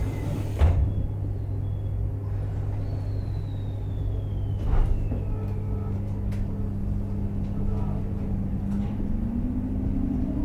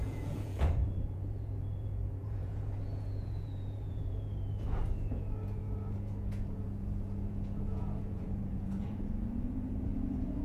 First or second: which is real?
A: first